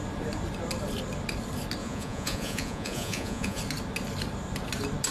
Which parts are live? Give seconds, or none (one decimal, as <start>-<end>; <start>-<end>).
0.0-1.8; 3.6-5.1